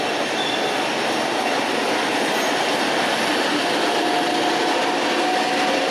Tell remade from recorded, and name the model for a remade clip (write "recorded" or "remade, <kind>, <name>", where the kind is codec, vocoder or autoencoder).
recorded